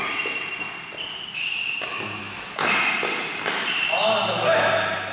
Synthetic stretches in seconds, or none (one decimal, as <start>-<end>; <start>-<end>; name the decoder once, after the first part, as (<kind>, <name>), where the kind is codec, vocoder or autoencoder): 2.2-2.7 (autoencoder, DAC-VAE)